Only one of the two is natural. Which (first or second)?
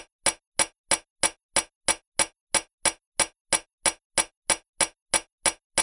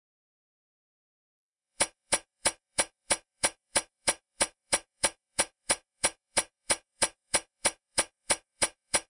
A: first